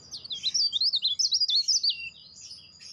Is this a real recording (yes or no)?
yes